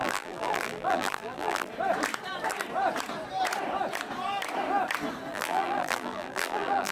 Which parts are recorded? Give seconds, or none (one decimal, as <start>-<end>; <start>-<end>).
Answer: 1.7-5.3